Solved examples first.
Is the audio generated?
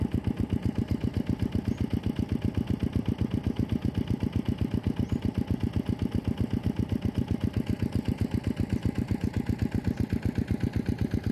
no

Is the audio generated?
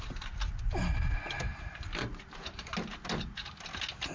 no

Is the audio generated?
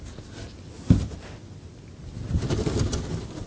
no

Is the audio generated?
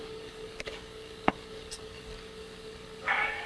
yes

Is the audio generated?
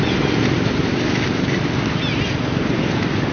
no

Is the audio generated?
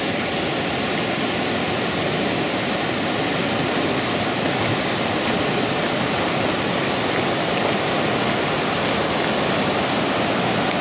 no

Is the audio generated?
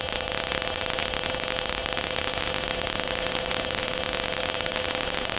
no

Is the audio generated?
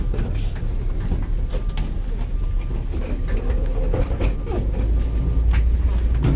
no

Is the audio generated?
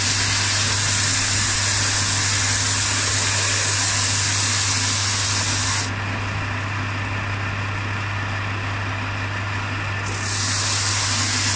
no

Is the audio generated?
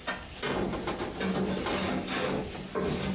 no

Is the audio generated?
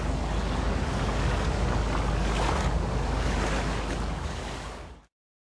yes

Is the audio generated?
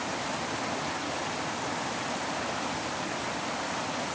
no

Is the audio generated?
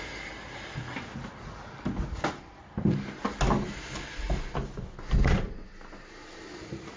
no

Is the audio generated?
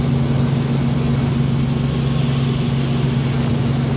no